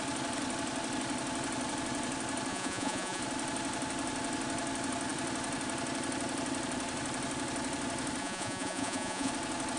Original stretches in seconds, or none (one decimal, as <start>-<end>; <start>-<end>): 0.0-2.5; 3.2-8.2; 9.3-9.8